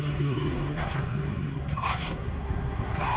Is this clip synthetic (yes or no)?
yes